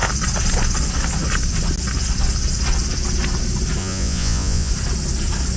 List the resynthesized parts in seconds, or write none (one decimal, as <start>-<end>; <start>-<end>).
3.8-4.7